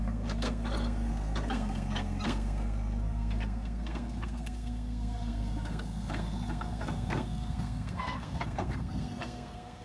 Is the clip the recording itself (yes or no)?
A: no